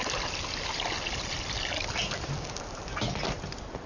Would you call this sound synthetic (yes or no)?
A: no